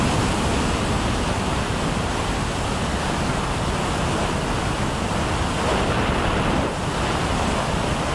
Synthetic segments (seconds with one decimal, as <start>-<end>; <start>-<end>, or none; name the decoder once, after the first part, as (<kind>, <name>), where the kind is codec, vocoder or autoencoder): 2.9-3.6 (codec, DAC)